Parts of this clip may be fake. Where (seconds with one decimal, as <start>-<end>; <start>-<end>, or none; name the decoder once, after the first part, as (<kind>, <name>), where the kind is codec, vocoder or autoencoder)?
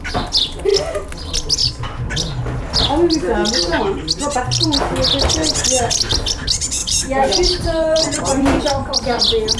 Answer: 6.8-8.6 (vocoder, BigVGAN v2)